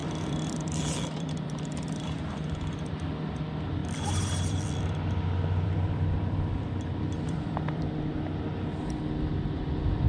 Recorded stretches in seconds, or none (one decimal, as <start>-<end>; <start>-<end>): 2.9-3.8; 7.8-10.1